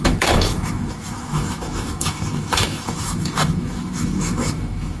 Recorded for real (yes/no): no